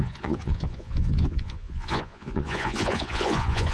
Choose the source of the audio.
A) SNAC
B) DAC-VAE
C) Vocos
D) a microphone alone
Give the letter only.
C